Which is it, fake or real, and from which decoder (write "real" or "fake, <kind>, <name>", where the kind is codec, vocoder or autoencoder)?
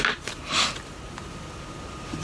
real